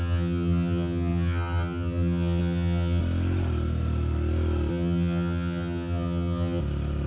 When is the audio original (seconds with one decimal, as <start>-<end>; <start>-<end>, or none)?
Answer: 3.0-4.7; 6.6-7.1